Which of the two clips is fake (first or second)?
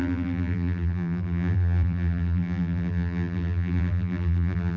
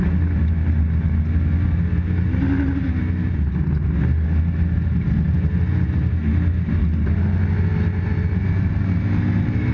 first